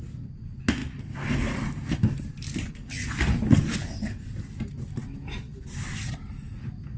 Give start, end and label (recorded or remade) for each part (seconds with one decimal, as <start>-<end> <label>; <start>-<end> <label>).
0.0-7.0 recorded